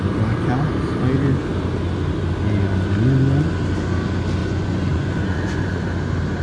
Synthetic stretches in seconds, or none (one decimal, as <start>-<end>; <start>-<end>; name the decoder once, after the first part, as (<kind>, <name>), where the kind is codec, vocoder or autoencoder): 4.4-5.8 (vocoder, Vocos)